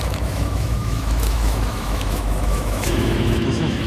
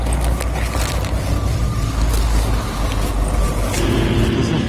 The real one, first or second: second